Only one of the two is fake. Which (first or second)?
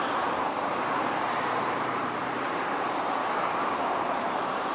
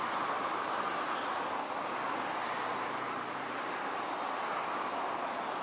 first